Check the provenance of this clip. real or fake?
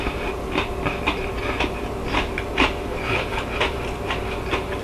real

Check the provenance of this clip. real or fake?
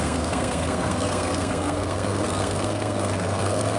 fake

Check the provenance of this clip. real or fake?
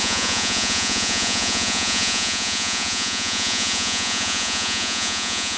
fake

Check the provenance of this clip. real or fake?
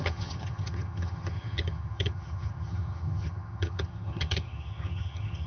fake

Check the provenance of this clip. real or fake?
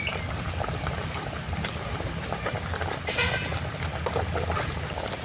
real